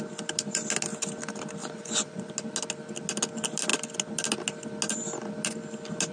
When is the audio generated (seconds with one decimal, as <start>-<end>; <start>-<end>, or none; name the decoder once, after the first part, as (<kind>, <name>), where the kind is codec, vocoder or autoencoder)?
1.6-2.3 (vocoder, Vocos)